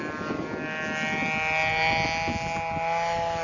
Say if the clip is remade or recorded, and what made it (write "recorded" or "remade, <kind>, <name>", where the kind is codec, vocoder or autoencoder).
recorded